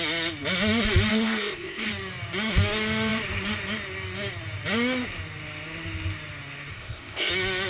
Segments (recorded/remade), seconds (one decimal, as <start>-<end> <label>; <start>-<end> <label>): 0.0-1.1 recorded; 1.1-1.9 remade; 1.9-6.7 recorded; 6.7-7.3 remade; 7.3-7.7 recorded